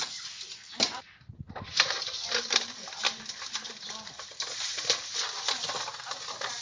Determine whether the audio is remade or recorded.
recorded